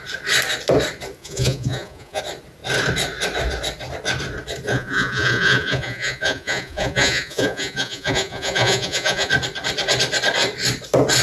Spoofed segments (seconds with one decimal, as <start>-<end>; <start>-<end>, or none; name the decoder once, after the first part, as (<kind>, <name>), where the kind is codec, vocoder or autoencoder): 1.2-2.2 (vocoder, Vocos); 4.7-9.3